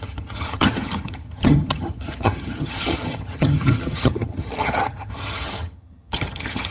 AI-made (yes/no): yes